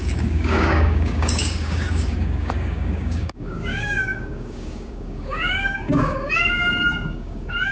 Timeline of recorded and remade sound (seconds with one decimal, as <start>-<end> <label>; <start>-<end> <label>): 0.0-7.7 remade